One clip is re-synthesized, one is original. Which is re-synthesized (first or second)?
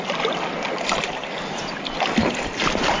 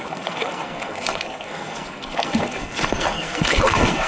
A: second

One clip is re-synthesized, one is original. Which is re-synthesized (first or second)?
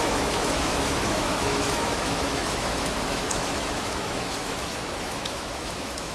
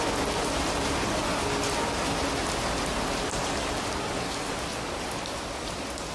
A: first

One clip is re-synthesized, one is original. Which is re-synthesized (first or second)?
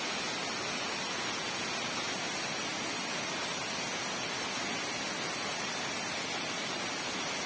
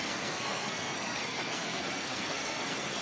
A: second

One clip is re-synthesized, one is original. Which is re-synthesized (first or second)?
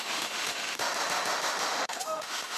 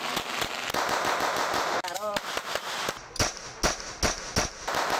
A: first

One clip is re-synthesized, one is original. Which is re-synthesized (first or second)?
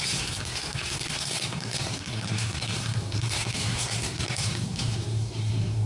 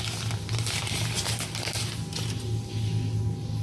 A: first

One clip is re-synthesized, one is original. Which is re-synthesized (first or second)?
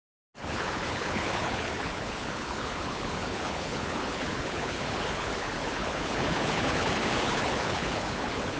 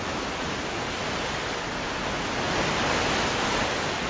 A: first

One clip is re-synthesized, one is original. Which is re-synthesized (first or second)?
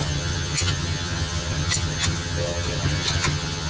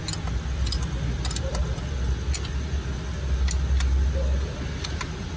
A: first